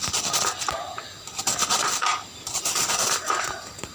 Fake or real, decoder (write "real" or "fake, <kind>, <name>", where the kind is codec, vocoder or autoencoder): real